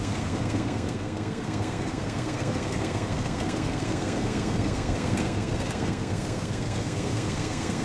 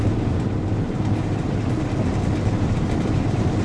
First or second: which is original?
second